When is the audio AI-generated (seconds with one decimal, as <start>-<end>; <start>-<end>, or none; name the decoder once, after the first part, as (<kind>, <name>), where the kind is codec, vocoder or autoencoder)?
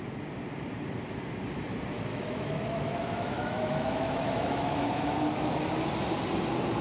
2.1-5.7 (autoencoder, DAC-VAE)